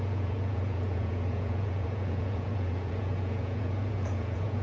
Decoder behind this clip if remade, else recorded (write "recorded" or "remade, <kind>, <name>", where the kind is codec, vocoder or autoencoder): remade, vocoder, Vocos